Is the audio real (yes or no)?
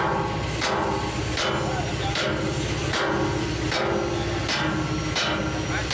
yes